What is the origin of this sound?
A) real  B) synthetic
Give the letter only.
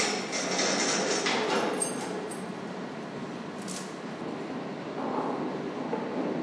A